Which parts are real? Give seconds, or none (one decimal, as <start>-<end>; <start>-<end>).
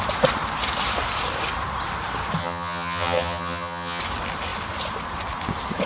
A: 0.0-2.4; 4.0-5.9